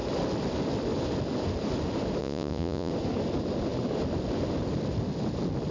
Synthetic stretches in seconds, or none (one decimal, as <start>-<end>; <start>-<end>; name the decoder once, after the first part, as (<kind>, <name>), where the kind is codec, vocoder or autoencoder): 2.2-2.9 (vocoder, Vocos)